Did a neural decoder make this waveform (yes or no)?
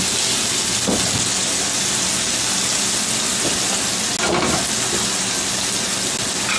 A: no